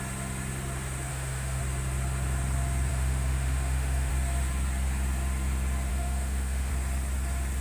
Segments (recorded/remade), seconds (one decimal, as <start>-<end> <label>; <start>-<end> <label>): 0.0-1.1 recorded; 1.1-1.6 remade; 1.6-2.9 recorded; 2.9-4.1 remade; 4.1-5.9 recorded; 5.9-6.7 remade; 6.7-7.6 recorded